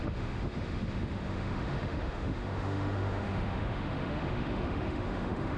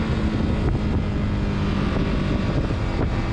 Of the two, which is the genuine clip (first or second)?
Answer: second